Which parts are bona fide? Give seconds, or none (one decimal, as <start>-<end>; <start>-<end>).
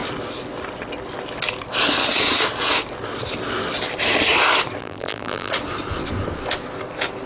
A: 0.0-4.8; 5.5-7.3